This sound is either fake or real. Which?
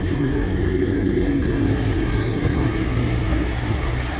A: fake